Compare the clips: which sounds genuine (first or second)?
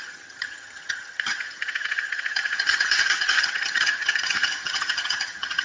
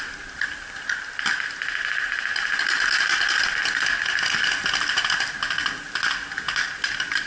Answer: second